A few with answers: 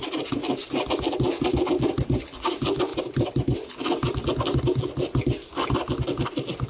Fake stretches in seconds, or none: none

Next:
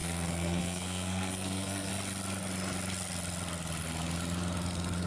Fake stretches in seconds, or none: 0.0-1.9

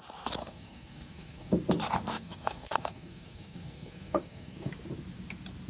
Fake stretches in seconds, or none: 0.4-1.5; 2.1-4.7

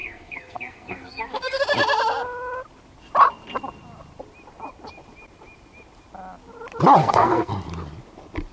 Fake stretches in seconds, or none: 0.0-1.6; 7.0-7.5

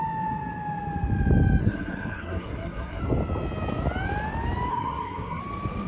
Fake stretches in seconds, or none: 1.6-3.0; 4.7-5.4